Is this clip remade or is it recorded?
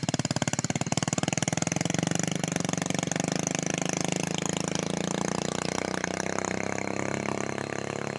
recorded